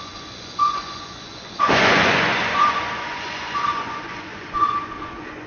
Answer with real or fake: fake